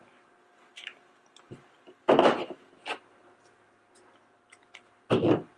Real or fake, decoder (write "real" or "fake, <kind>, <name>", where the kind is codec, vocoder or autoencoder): real